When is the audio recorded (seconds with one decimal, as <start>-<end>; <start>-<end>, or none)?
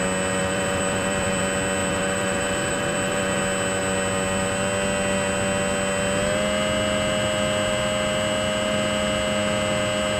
0.0-0.4; 1.4-1.8; 3.4-10.2